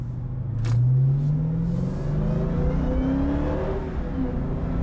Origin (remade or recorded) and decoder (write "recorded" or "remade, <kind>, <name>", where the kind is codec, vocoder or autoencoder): recorded